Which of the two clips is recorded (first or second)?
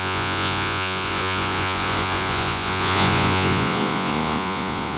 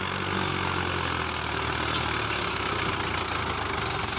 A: second